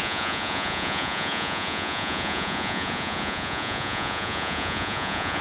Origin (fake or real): fake